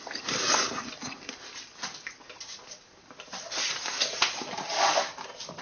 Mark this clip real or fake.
real